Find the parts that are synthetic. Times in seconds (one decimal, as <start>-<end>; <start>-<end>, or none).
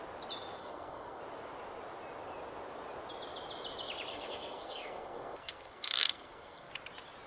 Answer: 0.6-1.2; 4.1-6.7